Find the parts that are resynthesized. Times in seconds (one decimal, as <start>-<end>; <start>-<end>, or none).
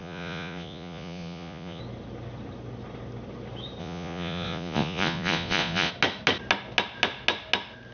0.0-1.8; 3.8-5.9